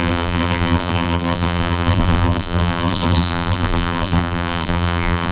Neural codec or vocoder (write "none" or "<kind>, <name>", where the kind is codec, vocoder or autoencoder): vocoder, BigVGAN v2